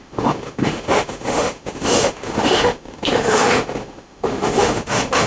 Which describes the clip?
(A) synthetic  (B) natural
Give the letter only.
A